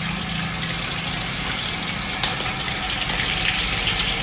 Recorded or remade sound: recorded